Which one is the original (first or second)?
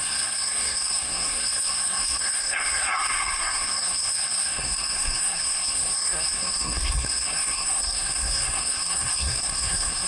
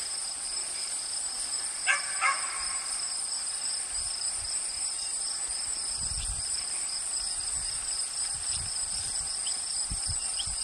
second